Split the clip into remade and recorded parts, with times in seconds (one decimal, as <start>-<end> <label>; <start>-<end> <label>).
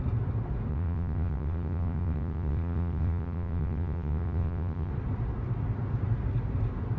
0.0-0.7 recorded; 0.7-4.9 remade; 4.9-7.0 recorded